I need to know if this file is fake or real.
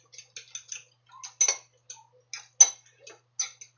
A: real